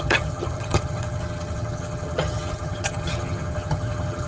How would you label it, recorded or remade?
remade